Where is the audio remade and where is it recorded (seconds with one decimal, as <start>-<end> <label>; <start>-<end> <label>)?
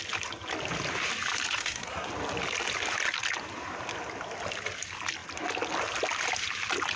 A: 0.0-1.6 recorded; 1.6-2.1 remade; 2.1-7.0 recorded